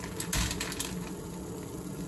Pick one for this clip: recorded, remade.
recorded